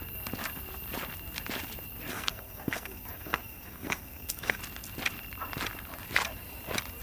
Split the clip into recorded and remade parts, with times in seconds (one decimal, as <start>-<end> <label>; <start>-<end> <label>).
0.0-2.1 recorded; 2.1-4.6 remade; 4.6-7.0 recorded